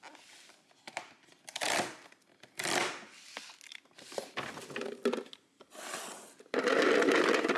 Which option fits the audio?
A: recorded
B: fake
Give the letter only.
A